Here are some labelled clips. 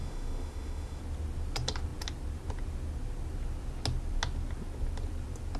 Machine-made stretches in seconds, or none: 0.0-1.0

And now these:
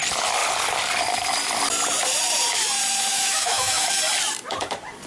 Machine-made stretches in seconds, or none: 3.1-4.0

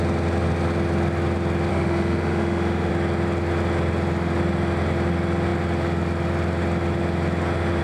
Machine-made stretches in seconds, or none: 1.7-2.9